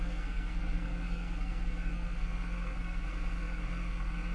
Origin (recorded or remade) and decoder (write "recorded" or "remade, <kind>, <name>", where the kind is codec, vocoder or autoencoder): remade, codec, SNAC